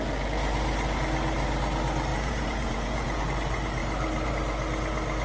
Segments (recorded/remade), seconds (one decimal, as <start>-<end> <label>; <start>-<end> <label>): 0.0-2.1 recorded; 2.1-3.2 remade; 3.2-5.2 recorded